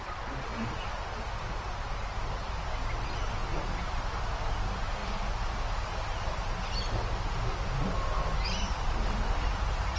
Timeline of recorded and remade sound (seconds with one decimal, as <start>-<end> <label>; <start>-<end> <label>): 0.0-3.4 recorded; 3.4-4.2 remade; 4.2-10.0 recorded